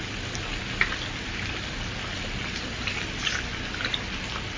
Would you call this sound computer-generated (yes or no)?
no